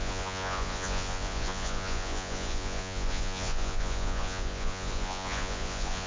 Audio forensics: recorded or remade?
remade